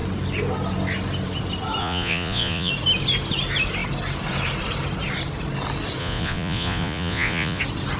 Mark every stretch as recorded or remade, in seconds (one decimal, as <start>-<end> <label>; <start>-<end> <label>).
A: 0.0-1.8 recorded; 1.8-2.7 remade; 2.7-6.0 recorded; 6.0-7.6 remade; 7.6-8.0 recorded